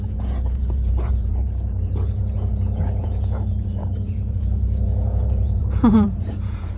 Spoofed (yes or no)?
yes